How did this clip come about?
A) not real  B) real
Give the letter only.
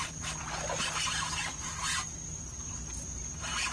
B